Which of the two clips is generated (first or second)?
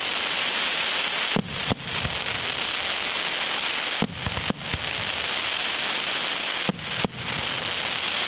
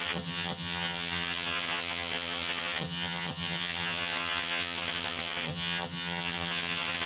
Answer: second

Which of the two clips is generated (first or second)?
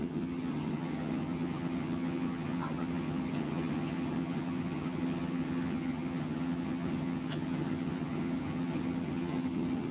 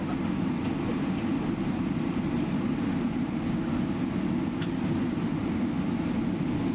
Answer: first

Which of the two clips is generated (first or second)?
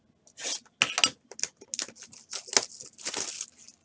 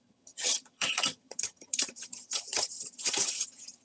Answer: second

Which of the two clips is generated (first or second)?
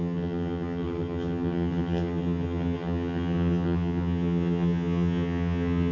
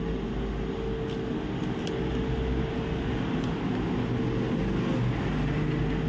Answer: first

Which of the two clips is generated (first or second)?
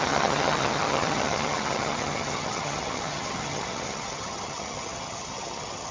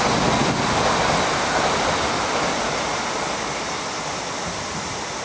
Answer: first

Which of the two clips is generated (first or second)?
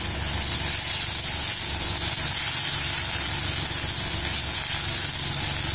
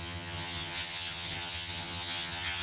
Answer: second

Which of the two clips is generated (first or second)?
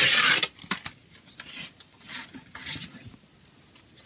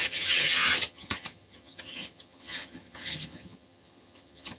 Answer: second